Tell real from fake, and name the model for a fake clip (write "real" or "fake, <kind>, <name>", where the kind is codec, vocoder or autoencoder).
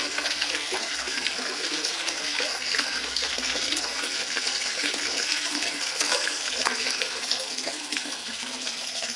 fake, codec, SNAC